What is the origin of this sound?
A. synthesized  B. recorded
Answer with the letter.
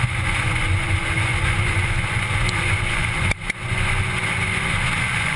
A